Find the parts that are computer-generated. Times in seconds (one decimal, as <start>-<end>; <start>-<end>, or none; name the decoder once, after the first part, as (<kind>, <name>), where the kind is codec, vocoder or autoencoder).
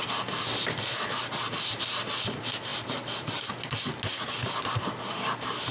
2.7-3.5 (vocoder, BigVGAN v2)